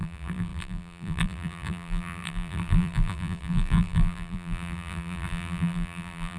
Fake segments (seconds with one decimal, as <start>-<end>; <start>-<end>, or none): 0.0-6.4